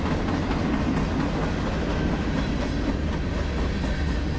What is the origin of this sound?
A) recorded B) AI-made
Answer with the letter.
A